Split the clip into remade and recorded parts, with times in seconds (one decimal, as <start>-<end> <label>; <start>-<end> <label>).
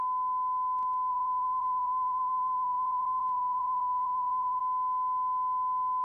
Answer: 0.0-1.1 recorded; 1.1-4.6 remade; 4.6-6.0 recorded